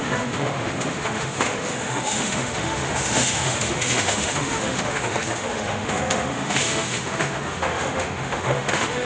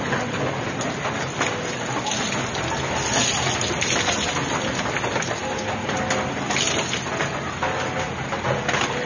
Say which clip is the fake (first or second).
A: first